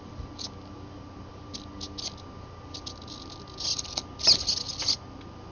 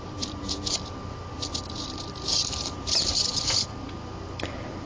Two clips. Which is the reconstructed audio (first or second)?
second